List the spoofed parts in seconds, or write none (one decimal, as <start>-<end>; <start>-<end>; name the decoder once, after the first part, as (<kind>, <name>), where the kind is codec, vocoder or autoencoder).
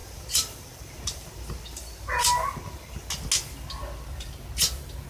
0.0-3.1 (vocoder, BigVGAN v2)